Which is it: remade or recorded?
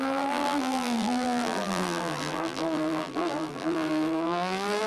remade